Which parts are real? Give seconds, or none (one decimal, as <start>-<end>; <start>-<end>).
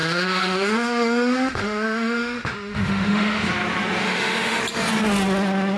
3.5-4.0; 4.6-5.8